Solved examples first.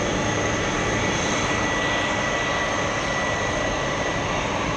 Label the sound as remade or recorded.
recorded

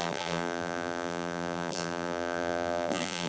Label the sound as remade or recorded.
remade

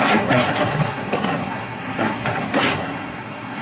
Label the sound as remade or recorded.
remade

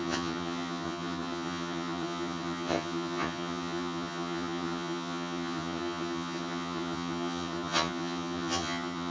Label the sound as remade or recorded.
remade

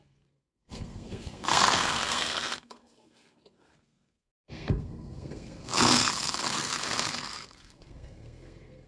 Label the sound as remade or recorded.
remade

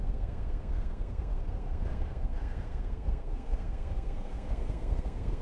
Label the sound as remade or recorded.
remade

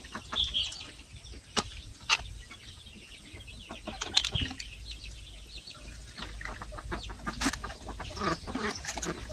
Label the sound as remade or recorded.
remade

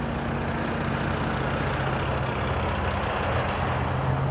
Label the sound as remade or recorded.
recorded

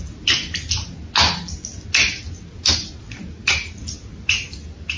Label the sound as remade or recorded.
recorded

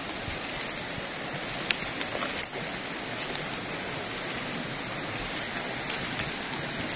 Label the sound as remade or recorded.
recorded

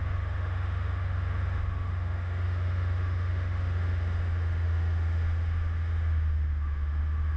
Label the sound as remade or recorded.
remade